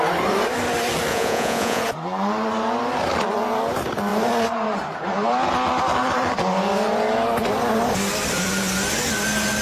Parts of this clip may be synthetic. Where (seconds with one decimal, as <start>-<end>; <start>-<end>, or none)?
1.1-1.8